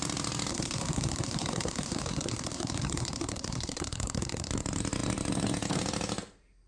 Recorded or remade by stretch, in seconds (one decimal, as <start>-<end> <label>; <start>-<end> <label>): 0.0-0.5 recorded; 0.5-4.5 remade; 4.5-6.7 recorded